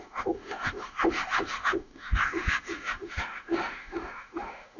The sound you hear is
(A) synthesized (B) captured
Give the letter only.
A